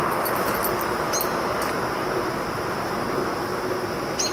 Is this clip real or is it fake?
real